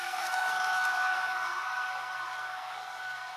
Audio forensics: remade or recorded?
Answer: remade